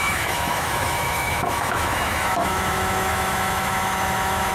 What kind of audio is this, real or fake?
fake